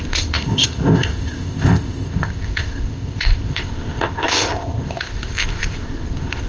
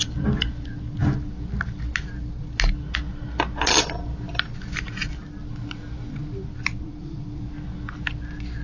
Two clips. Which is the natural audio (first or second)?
second